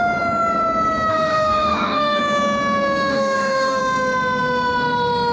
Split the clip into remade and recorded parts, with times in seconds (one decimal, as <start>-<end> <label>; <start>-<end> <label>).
0.0-1.1 recorded; 1.1-2.2 remade; 2.2-3.1 recorded; 3.1-3.8 remade; 3.8-5.3 recorded